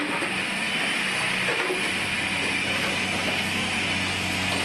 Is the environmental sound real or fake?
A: real